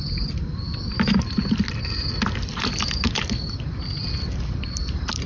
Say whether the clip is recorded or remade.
recorded